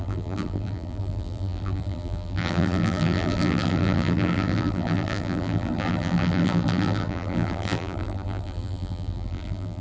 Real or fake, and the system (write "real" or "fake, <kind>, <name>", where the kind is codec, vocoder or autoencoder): fake, vocoder, BigVGAN v2